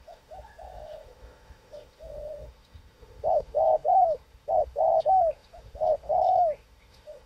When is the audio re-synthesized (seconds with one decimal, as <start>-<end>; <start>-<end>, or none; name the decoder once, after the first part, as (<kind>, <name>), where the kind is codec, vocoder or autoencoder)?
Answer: 0.0-7.3 (autoencoder, DAC-VAE)